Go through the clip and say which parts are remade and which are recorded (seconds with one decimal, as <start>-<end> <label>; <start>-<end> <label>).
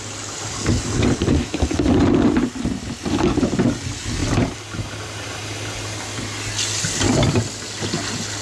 0.0-8.4 recorded